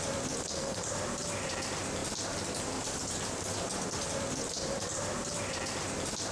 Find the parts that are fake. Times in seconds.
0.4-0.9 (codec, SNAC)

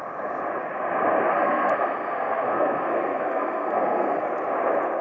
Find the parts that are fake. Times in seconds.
1.2-4.2 (codec, SNAC)

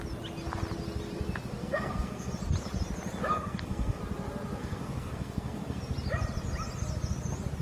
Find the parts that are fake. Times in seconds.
1.6-2.3 (codec, SNAC); 3.3-4.0; 4.6-5.8

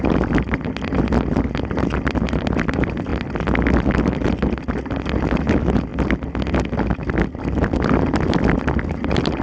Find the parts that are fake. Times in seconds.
none

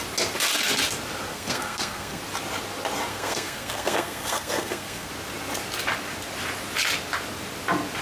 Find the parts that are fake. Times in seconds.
1.3-2.2 (codec, SNAC); 3.1-5.1